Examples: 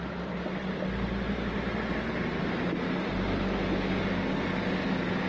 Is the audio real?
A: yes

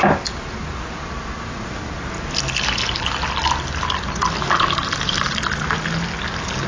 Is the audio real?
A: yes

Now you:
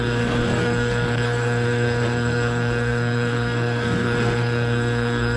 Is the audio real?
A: no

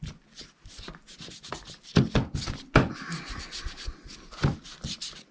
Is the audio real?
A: yes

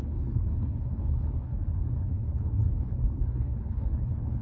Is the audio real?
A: no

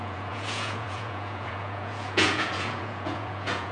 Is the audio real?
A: no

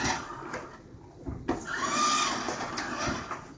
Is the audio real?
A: yes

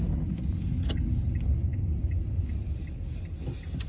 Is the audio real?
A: yes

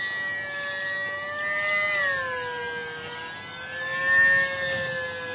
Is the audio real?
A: yes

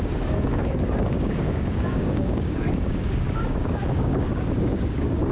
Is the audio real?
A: no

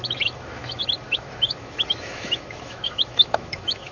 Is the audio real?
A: no